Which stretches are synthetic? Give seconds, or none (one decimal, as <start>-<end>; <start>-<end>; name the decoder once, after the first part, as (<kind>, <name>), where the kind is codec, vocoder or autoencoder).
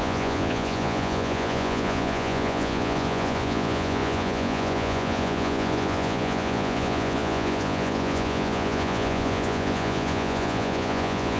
0.0-11.4 (vocoder, Vocos)